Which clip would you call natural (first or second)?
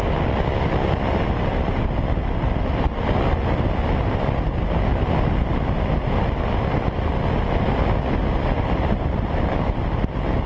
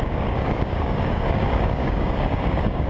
first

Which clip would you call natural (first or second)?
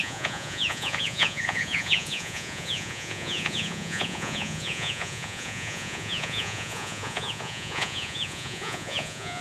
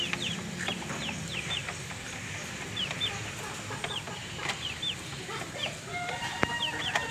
second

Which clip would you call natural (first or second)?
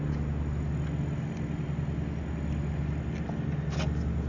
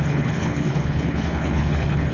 first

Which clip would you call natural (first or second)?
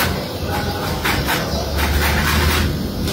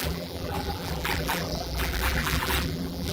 first